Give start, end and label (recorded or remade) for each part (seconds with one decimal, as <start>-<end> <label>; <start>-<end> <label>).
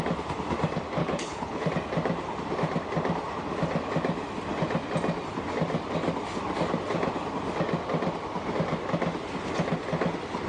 0.0-1.0 recorded; 1.0-1.7 remade; 1.7-10.5 recorded